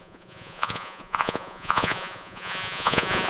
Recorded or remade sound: remade